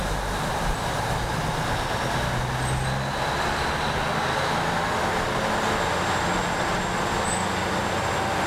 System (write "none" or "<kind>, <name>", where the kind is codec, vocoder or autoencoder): none